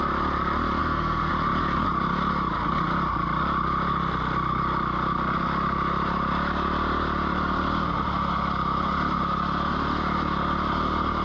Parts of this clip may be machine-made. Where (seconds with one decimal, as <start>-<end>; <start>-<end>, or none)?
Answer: 0.8-1.3